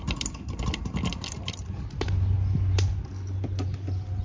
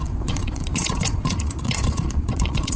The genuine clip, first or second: first